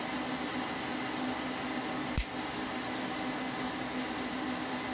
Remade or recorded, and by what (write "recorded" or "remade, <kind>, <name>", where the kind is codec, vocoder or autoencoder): recorded